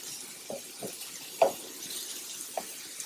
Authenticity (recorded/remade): recorded